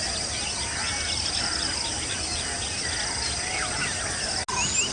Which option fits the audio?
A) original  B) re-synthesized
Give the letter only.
A